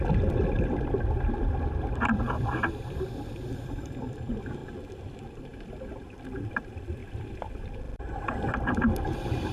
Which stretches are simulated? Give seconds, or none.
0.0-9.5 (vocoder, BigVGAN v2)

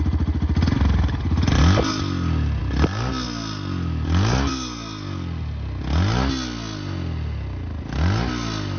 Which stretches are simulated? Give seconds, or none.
none

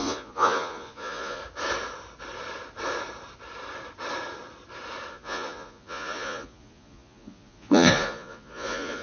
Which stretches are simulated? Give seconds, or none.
0.0-1.4 (vocoder, Vocos); 5.1-9.0

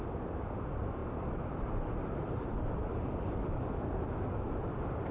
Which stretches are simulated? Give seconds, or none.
1.0-3.1 (vocoder, BigVGAN v2)

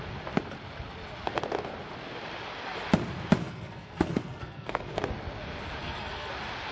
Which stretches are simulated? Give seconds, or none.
3.4-5.0 (codec, SNAC); 5.8-6.3

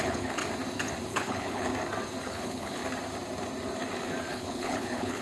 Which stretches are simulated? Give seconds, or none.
0.0-0.4 (codec, HILCodec); 1.1-1.7; 2.2-2.8; 4.3-5.2

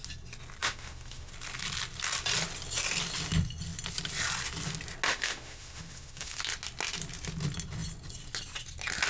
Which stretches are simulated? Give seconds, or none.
0.6-1.3 (autoencoder, DAC-VAE); 5.1-6.4

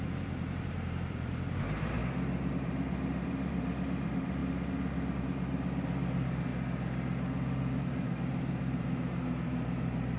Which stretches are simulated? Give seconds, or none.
0.0-2.0 (vocoder, BigVGAN v2); 2.5-6.5; 7.8-10.2